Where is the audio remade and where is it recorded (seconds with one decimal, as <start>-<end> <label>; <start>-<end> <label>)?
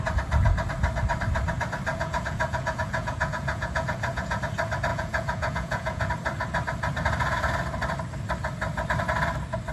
0.0-1.9 recorded; 1.9-4.4 remade; 4.4-4.9 recorded; 4.9-6.1 remade; 6.1-9.7 recorded